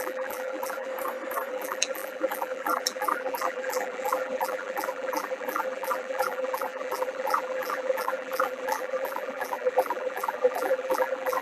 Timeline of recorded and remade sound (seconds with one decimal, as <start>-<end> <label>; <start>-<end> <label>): 0.0-0.9 remade; 0.9-1.5 recorded; 1.5-11.4 remade